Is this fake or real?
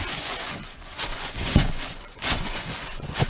fake